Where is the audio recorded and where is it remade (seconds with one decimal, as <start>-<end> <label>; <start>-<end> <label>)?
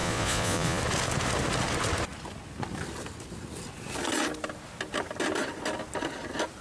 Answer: 0.0-0.8 remade; 0.8-6.6 recorded